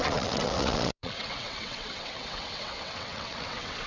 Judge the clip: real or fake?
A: fake